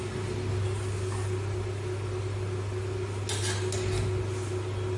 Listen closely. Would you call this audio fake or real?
real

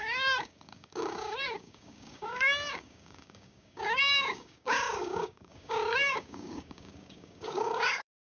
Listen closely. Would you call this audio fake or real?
fake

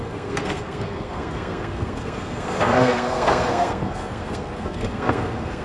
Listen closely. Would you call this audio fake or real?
fake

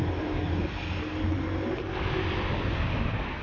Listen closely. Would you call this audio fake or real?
real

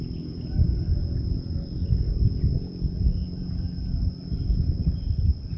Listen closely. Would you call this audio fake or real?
real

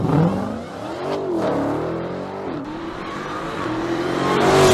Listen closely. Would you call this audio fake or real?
fake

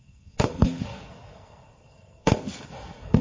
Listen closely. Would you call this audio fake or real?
fake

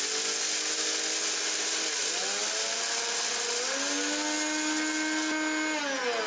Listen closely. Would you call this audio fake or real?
real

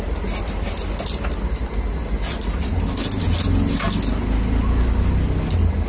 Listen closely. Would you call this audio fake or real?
real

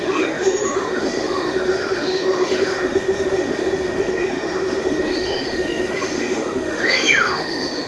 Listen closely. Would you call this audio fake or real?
fake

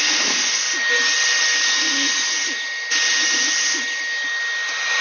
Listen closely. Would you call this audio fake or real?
real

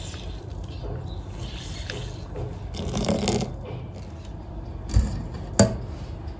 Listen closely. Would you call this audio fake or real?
real